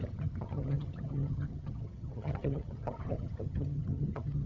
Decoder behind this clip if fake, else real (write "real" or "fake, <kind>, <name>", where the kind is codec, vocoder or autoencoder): fake, vocoder, HiFi-GAN